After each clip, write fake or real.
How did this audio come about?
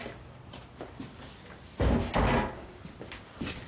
real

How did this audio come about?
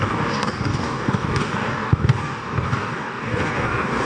fake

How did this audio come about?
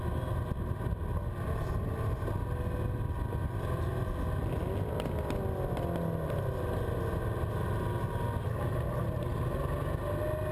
real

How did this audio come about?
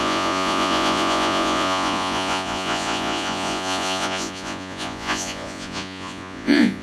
fake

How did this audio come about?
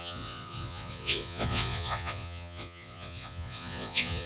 fake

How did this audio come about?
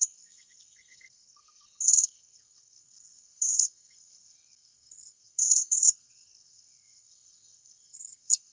fake